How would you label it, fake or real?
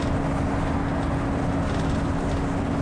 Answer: real